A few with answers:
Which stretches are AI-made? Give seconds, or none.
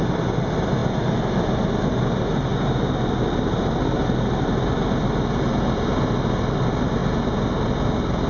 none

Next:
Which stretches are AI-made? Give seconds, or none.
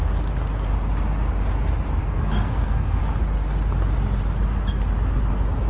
2.0-3.0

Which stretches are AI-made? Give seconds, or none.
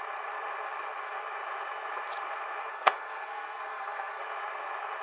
2.7-4.2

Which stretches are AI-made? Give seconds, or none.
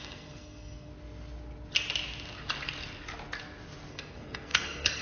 0.0-0.9; 3.9-5.0